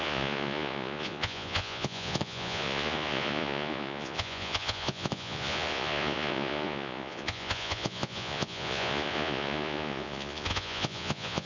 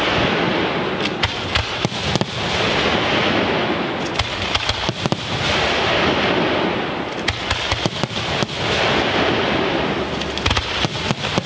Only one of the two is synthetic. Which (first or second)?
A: first